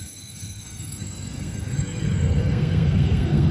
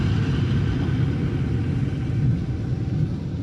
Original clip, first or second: second